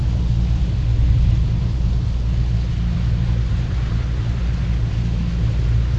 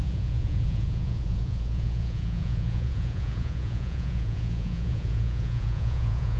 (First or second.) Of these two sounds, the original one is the first